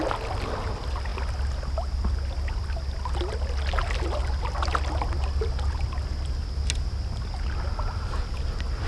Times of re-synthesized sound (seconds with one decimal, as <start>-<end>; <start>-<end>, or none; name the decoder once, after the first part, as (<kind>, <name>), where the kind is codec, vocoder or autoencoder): none